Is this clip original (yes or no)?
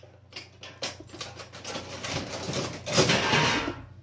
yes